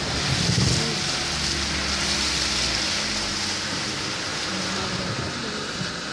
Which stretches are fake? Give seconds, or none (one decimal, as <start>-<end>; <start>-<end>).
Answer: 4.3-5.1